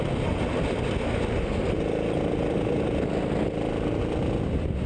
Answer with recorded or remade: recorded